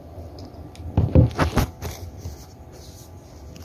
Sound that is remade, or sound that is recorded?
recorded